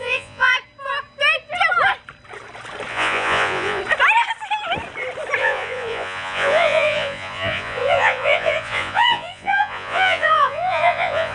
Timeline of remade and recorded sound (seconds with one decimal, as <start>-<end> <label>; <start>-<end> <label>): 0.0-0.5 remade; 0.5-2.9 recorded; 2.9-3.8 remade; 3.8-5.4 recorded; 5.4-11.3 remade